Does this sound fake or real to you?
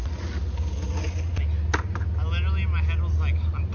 real